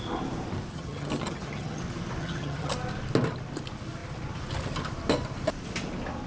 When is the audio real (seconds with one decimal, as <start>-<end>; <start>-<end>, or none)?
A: 0.0-0.7; 1.8-2.2; 2.7-6.3